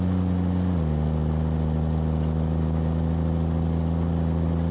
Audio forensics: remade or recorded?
recorded